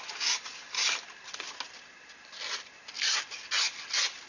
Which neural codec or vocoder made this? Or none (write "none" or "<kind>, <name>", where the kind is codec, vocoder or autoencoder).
none